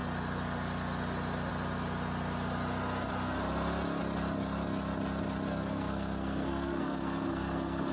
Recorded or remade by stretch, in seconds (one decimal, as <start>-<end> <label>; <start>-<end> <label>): 0.0-5.5 recorded; 5.5-7.9 remade